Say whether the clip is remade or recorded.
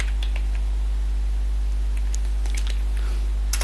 recorded